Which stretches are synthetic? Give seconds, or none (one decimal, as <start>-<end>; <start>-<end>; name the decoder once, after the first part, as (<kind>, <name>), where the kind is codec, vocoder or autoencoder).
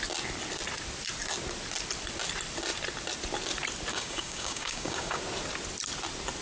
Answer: 3.9-5.2 (codec, DAC)